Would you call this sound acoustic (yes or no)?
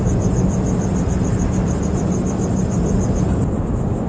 yes